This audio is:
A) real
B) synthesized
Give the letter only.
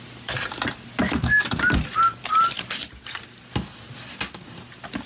A